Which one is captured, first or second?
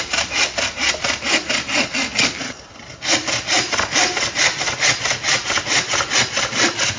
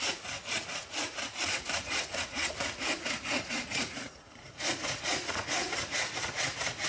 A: first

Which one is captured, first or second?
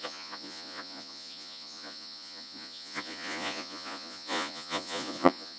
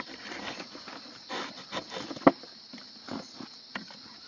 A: second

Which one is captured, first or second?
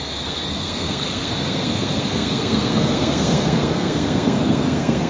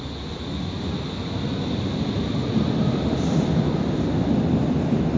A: second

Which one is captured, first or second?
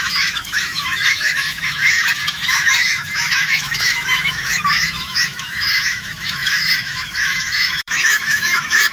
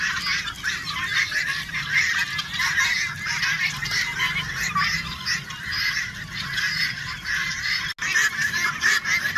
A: second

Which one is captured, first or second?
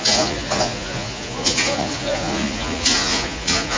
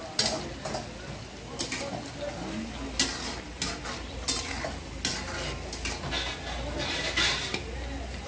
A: second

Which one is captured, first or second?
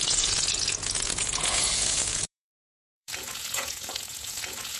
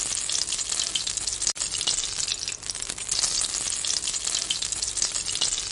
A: second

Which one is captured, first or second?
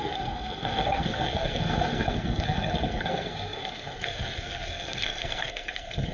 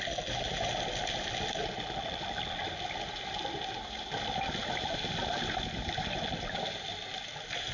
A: second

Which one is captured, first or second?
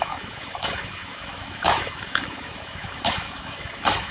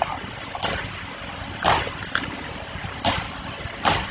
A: second